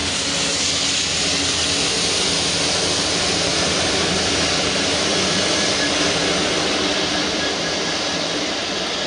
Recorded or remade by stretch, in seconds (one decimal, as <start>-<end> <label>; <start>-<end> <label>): 0.0-2.6 recorded; 2.6-6.2 remade; 6.2-6.9 recorded; 6.9-9.1 remade